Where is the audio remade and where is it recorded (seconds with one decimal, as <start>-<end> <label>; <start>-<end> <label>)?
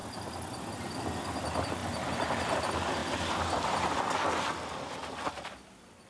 0.0-6.1 recorded